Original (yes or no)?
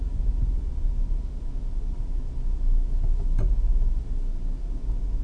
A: yes